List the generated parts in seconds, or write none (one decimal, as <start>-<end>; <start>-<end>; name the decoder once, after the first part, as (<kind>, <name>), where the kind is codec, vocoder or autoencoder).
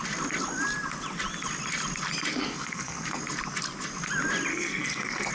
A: 2.3-3.2 (codec, SNAC); 4.5-5.3